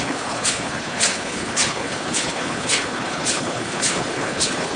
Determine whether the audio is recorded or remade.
remade